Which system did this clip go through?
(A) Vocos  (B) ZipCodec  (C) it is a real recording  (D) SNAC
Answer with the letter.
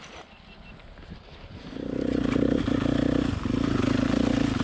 C